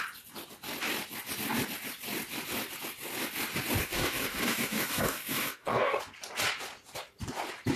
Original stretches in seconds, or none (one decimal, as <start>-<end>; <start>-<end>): 0.0-3.8; 6.0-7.8

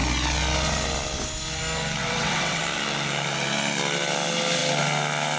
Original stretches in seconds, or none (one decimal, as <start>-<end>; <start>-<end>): 0.0-2.0; 2.6-5.4